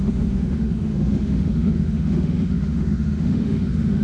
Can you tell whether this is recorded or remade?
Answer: remade